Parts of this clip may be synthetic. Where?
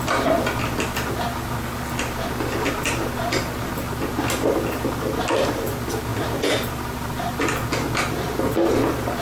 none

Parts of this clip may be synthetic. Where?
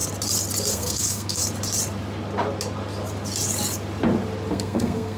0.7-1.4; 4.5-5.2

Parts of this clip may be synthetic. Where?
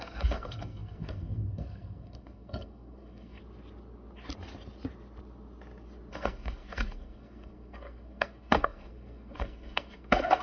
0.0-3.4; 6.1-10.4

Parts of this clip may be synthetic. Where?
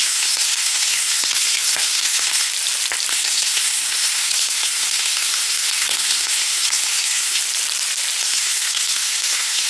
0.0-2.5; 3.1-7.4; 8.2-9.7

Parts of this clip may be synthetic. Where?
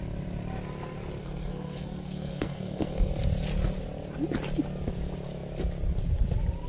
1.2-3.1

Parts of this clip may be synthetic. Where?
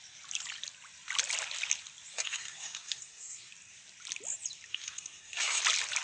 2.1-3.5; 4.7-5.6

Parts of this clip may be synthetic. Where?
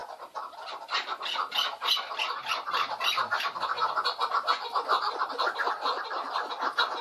none